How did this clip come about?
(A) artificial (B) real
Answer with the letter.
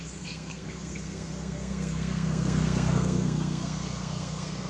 A